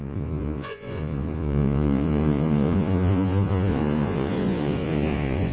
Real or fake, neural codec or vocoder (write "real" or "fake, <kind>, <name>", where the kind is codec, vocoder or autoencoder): fake, vocoder, Vocos